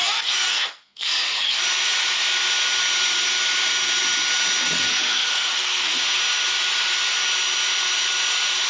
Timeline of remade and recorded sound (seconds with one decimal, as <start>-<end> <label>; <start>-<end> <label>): 0.0-1.6 remade; 1.6-4.9 recorded; 4.9-6.0 remade; 6.0-8.7 recorded